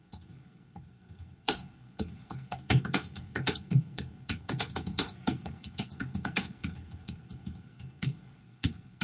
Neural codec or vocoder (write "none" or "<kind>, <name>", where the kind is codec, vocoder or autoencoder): codec, SNAC